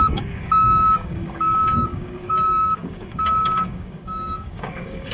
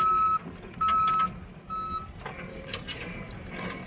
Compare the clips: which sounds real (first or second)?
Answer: second